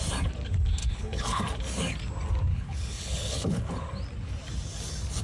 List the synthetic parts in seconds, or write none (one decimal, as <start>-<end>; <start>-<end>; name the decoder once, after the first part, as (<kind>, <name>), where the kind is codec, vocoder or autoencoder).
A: 0.8-1.4 (codec, HILCodec); 2.5-3.7